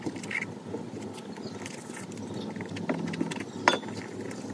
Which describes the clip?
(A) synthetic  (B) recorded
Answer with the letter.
B